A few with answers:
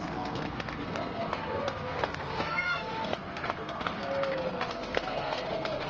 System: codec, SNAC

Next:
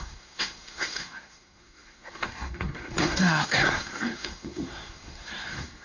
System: codec, SNAC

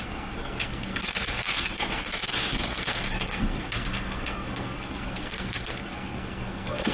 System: codec, SNAC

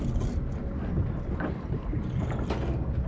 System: none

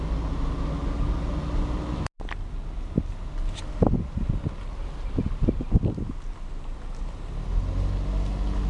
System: none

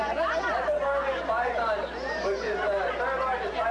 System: none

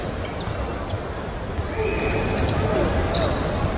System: none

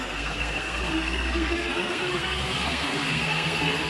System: codec, SNAC